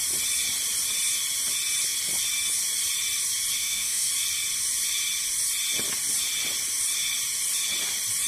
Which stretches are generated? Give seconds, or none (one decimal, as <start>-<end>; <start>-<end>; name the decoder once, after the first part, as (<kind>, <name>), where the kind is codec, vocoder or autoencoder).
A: 3.6-4.1 (autoencoder, DAC-VAE)